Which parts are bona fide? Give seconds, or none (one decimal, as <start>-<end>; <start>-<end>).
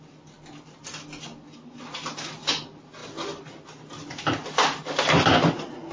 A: 0.0-5.9